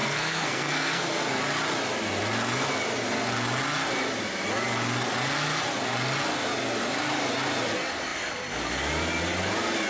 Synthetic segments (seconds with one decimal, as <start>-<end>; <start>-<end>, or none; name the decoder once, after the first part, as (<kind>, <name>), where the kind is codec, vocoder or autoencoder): 0.0-1.4 (codec, SNAC)